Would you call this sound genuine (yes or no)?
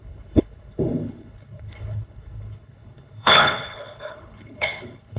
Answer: no